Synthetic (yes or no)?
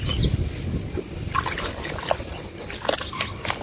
no